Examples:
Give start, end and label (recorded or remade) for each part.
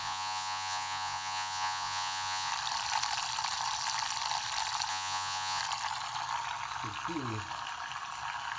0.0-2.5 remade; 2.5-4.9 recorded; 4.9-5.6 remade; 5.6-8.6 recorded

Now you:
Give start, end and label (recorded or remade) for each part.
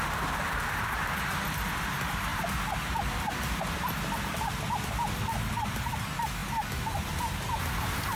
0.0-8.2 recorded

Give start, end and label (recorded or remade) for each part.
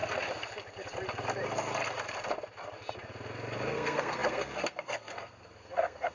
0.0-3.7 recorded; 3.7-6.1 remade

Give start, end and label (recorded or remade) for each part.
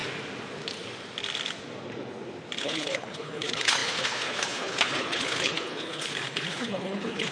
0.0-2.6 recorded; 2.6-7.3 remade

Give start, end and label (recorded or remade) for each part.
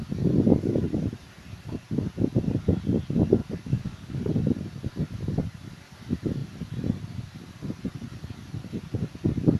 0.0-3.4 recorded; 3.4-4.3 remade; 4.3-9.6 recorded